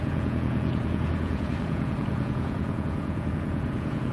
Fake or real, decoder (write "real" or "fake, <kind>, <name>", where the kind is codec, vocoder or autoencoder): fake, vocoder, Vocos